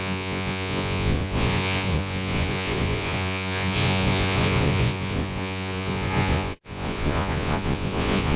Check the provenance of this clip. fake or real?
fake